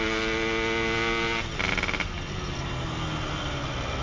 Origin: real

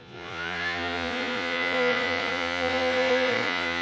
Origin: fake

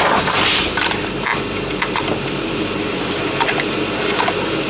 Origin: real